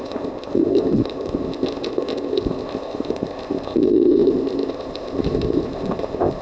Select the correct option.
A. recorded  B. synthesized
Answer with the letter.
B